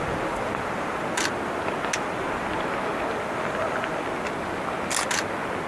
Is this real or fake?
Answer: real